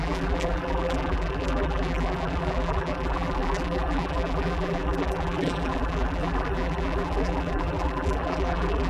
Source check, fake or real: fake